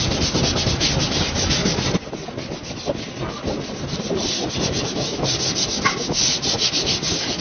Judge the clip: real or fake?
real